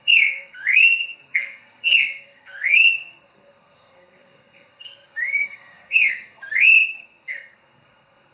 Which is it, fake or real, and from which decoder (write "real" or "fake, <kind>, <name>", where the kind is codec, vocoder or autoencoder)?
fake, codec, SNAC